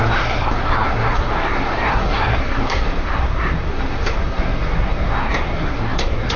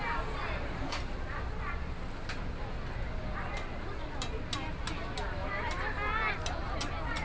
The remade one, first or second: first